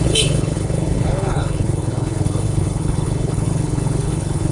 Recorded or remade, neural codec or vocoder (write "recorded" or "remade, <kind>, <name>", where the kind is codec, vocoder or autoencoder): remade, codec, HILCodec